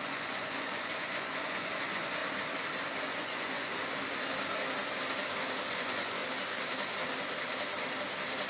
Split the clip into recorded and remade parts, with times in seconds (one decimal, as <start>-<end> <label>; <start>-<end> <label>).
0.0-2.2 remade; 2.2-3.0 recorded; 3.0-3.8 remade; 3.8-5.7 recorded; 5.7-6.2 remade; 6.2-8.5 recorded